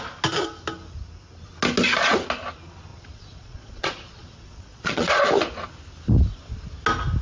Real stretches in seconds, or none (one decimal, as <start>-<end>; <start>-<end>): 0.0-2.9; 5.2-7.2